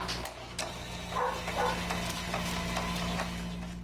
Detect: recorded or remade recorded